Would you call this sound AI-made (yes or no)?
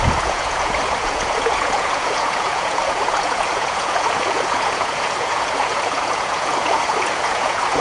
yes